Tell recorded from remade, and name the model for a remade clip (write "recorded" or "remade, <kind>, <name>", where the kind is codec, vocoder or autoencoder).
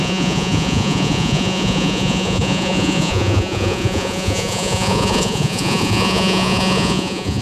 remade, vocoder, Vocos